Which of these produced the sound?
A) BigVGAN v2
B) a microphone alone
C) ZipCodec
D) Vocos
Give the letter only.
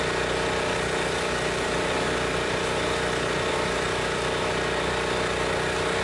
A